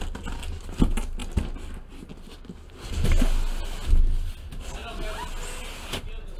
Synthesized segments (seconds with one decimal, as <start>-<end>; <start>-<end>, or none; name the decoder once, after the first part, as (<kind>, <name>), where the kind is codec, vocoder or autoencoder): none